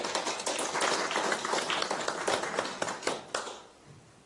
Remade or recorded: recorded